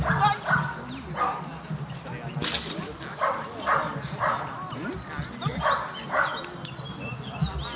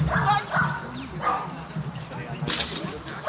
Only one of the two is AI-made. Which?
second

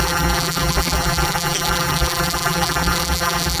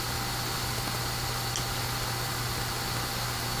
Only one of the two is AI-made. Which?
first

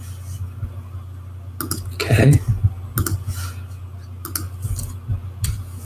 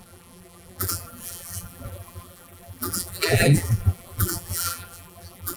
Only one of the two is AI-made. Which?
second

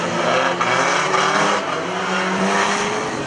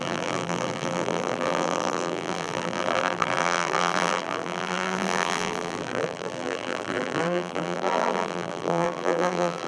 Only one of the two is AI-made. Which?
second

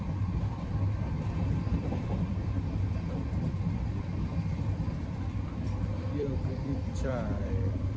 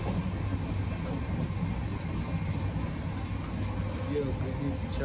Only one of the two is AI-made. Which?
first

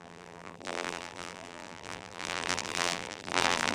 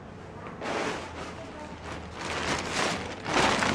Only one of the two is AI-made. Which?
first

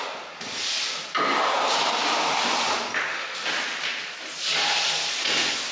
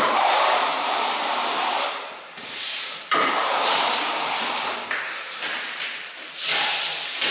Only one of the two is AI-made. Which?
second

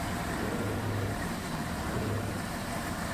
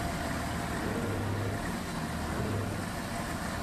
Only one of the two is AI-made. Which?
first